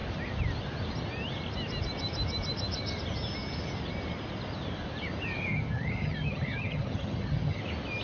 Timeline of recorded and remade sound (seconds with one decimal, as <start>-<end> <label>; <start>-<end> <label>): 0.0-5.5 recorded; 5.5-7.6 remade; 7.6-8.0 recorded